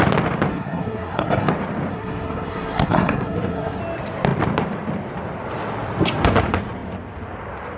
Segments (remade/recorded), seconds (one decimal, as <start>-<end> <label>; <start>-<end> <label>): 0.0-0.5 recorded; 0.5-1.5 remade; 1.5-1.9 recorded; 1.9-3.8 remade; 3.8-7.8 recorded